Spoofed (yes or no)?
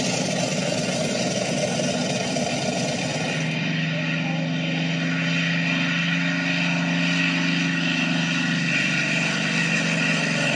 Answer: no